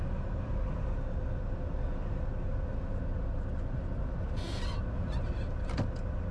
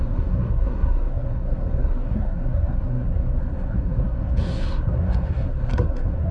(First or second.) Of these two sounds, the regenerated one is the second